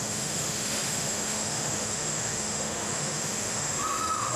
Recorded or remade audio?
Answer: remade